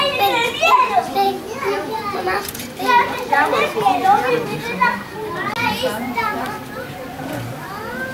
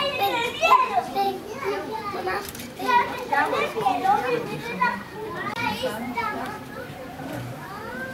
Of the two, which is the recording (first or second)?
first